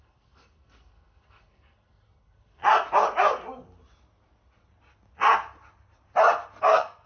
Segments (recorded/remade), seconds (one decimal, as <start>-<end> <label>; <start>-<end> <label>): 0.0-2.6 remade; 2.6-6.6 recorded; 6.6-7.1 remade